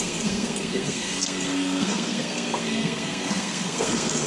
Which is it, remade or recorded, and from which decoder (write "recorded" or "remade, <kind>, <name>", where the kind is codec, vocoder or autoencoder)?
remade, codec, SNAC